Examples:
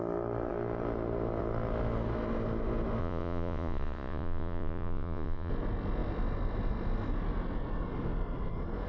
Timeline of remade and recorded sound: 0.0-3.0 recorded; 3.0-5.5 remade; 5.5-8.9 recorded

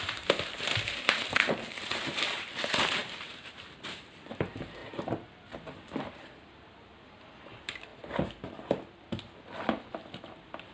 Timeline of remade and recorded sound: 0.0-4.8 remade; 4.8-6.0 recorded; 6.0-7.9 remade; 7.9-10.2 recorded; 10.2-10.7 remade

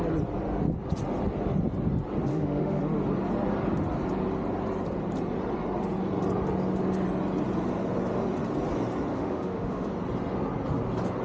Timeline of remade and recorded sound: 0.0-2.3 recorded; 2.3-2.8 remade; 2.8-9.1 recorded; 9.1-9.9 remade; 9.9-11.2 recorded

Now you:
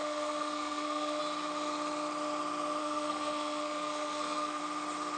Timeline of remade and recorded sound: 0.0-1.2 remade; 1.2-2.8 recorded; 2.8-4.6 remade; 4.6-5.2 recorded

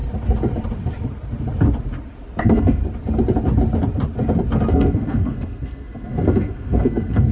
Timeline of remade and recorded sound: 0.0-2.4 recorded; 2.4-2.8 remade; 2.8-4.7 recorded; 4.7-7.3 remade